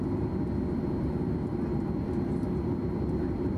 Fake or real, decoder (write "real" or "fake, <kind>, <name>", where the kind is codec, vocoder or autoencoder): real